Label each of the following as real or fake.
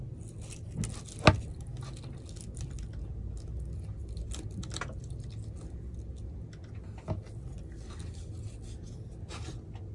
real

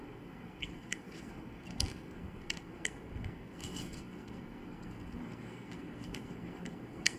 fake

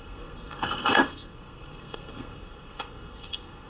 fake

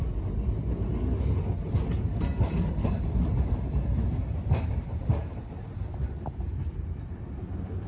real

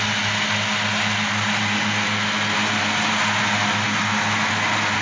real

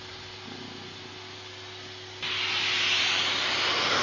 real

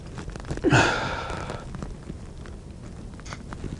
real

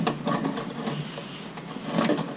real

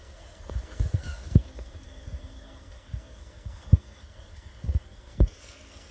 fake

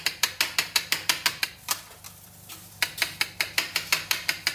real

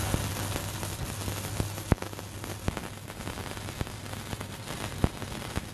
real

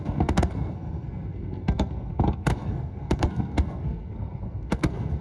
fake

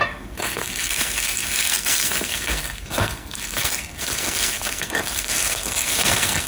fake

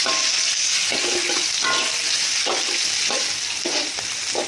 real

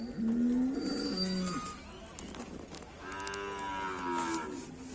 real